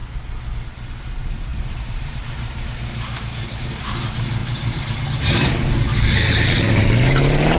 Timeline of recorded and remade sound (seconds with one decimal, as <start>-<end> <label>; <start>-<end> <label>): 0.0-0.7 recorded; 0.7-7.6 remade